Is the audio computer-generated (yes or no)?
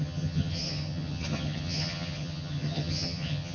yes